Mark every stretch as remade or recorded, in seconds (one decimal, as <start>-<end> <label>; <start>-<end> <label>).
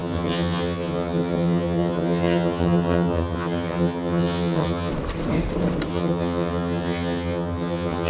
0.0-4.9 remade; 4.9-5.9 recorded; 5.9-8.1 remade